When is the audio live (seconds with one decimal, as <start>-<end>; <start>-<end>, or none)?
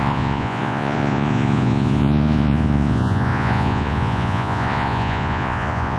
none